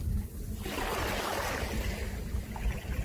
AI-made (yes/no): no